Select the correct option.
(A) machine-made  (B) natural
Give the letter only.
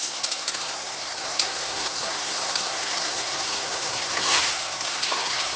A